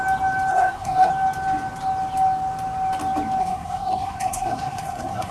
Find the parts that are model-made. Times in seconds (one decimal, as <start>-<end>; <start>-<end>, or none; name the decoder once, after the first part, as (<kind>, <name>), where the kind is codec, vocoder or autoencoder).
0.5-1.1 (codec, SNAC); 3.4-5.3